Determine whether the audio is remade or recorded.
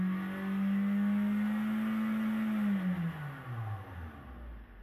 recorded